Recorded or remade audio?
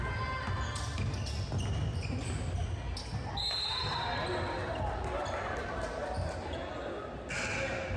recorded